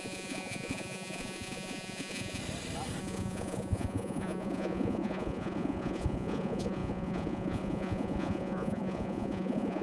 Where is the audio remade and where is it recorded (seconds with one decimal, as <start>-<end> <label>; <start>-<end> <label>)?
0.0-2.4 remade; 2.4-3.0 recorded; 3.0-9.8 remade